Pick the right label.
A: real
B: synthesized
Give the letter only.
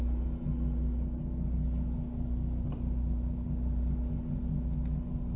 A